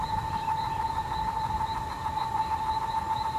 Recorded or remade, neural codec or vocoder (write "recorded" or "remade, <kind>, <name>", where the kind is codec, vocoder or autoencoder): recorded